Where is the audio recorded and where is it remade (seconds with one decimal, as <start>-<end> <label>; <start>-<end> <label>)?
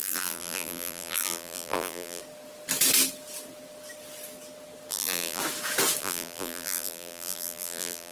0.0-2.2 remade; 2.2-4.9 recorded; 4.9-5.4 remade; 5.4-6.0 recorded; 6.0-8.1 remade